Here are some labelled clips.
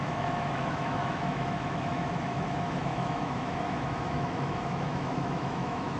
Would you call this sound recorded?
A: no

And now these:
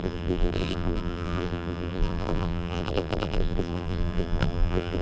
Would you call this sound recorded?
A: no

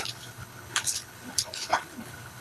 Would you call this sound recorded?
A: no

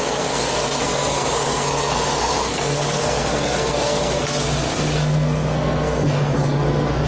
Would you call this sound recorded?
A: no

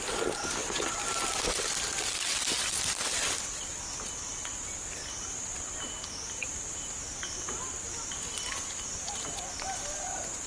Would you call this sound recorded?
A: yes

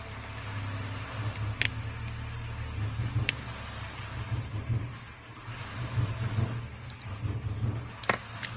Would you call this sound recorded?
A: yes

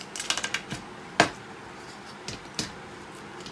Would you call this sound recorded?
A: yes